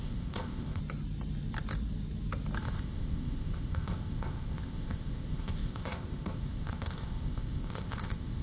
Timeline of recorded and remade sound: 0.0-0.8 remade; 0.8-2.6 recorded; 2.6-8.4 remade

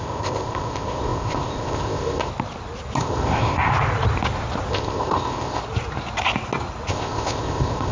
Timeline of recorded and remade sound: 0.0-2.3 remade; 2.3-3.0 recorded; 3.0-3.7 remade; 3.7-4.7 recorded; 4.7-5.6 remade; 5.6-6.9 recorded; 6.9-7.9 remade